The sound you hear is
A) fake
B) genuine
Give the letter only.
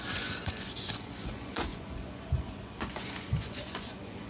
A